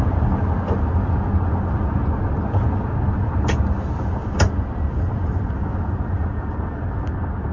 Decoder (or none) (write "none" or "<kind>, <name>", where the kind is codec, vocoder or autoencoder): none